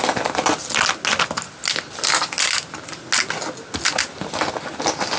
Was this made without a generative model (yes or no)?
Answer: yes